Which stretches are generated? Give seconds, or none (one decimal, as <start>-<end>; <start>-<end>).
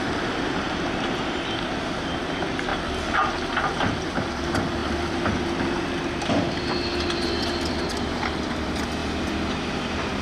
0.0-9.0; 9.5-10.2